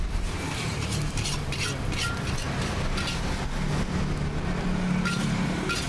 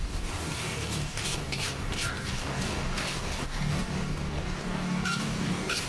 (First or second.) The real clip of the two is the first